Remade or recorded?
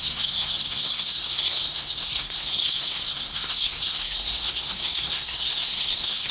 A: remade